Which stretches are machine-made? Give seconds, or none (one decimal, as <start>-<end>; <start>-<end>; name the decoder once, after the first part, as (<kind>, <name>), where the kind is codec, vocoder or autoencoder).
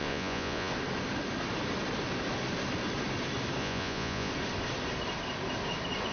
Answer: 0.0-0.7 (vocoder, Vocos); 3.6-4.3